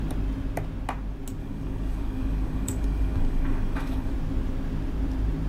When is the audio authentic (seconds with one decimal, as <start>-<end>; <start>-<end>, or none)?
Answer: 0.0-1.4; 4.1-5.5